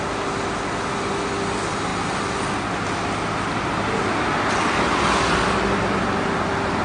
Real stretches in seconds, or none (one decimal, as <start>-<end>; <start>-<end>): 0.0-6.8